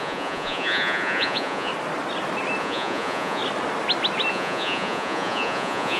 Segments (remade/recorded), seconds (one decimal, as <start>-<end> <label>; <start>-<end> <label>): 0.0-1.7 remade; 1.7-2.6 recorded; 2.6-3.4 remade; 3.4-4.3 recorded; 4.3-6.0 remade